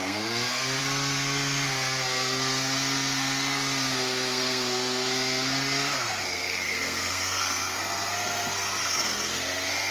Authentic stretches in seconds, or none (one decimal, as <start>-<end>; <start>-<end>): none